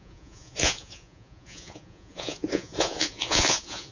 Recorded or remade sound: remade